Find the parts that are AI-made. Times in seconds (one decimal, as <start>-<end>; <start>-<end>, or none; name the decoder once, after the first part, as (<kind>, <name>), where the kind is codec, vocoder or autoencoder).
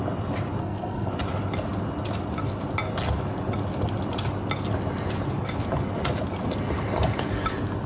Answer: 0.6-1.1 (codec, SNAC)